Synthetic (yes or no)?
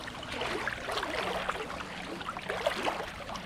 no